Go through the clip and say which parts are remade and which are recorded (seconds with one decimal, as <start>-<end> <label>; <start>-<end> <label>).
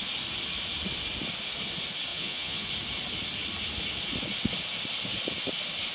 0.0-2.1 recorded; 2.1-2.7 remade; 2.7-5.9 recorded